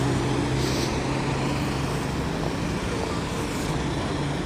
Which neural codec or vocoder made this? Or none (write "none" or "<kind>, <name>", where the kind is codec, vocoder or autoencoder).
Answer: none